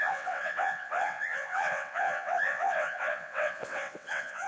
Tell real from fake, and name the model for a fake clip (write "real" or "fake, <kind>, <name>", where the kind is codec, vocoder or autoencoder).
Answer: fake, vocoder, WaveNeXt